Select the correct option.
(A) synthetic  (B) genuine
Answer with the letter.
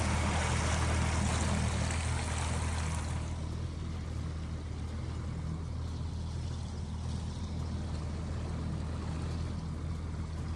B